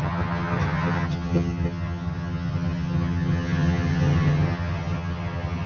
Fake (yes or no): yes